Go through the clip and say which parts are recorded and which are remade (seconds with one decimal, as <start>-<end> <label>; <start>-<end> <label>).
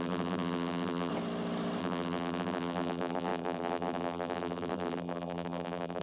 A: 0.0-1.1 remade; 1.1-1.8 recorded; 1.8-6.0 remade